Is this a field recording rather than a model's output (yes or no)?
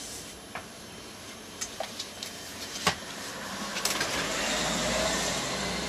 no